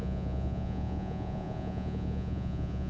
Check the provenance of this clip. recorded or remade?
remade